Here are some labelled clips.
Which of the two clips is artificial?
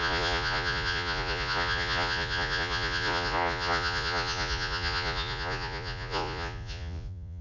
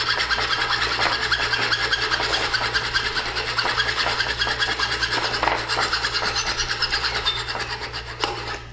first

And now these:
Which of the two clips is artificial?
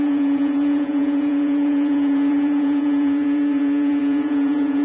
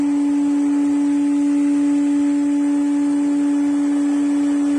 first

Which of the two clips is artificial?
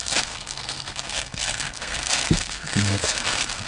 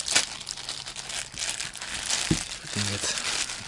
first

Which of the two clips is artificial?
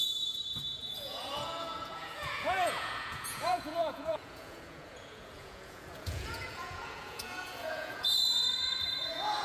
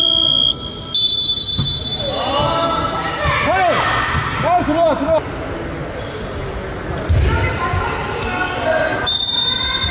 first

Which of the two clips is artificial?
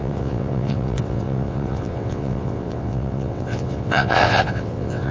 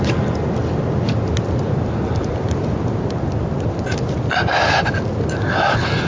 first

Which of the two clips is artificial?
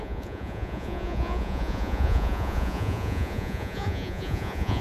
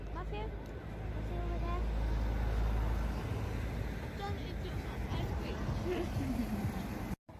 first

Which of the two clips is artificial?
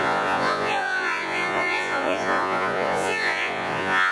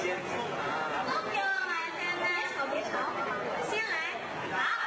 first